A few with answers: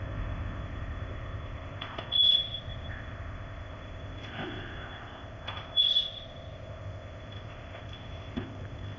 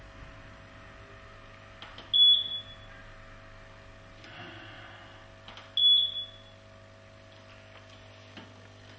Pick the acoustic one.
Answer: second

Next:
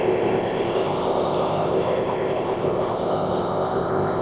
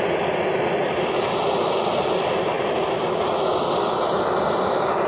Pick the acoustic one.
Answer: second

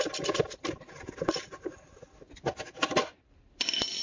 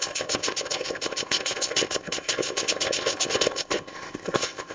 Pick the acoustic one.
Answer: first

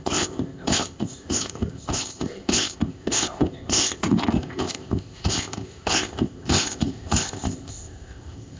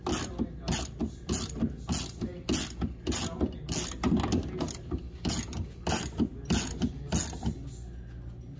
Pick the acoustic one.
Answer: second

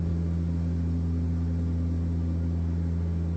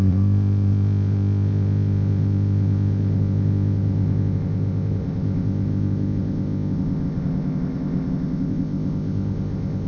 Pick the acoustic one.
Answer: first